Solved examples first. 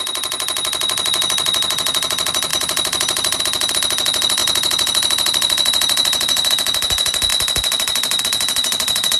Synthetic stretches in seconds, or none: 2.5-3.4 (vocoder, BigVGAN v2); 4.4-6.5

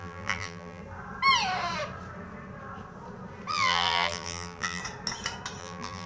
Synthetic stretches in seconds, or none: 0.0-0.8 (vocoder, BigVGAN v2); 3.5-4.8; 5.6-6.1

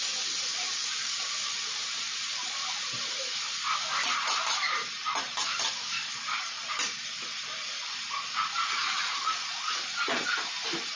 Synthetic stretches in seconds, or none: 0.5-2.6 (vocoder, BigVGAN v2); 8.8-10.5

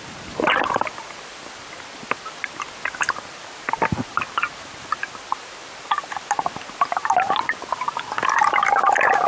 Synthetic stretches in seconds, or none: none